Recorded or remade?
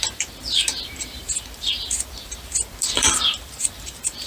remade